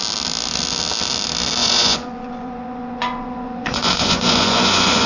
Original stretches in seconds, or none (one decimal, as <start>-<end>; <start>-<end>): 0.0-1.6